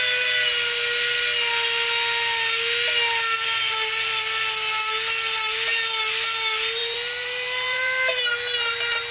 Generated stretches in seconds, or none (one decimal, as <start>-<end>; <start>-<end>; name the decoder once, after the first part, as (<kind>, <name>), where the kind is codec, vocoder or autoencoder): 6.8-8.2 (vocoder, BigVGAN v2)